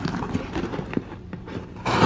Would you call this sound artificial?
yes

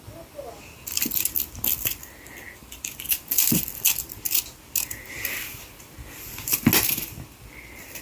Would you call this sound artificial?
no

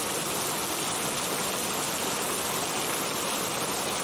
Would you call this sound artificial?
no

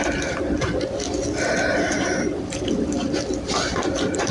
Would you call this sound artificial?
yes